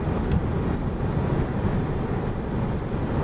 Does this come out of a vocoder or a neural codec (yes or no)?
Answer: no